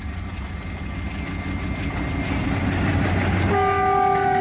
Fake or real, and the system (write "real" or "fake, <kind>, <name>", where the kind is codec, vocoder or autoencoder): real